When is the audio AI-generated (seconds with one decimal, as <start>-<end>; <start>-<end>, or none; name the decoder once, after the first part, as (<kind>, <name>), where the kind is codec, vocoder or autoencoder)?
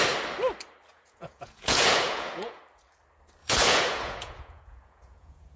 0.9-2.6 (vocoder, Vocos); 3.4-5.6